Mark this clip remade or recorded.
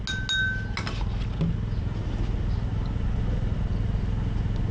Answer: recorded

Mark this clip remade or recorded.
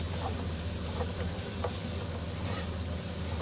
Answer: recorded